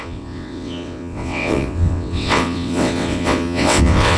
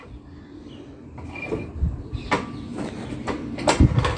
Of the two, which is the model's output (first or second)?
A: first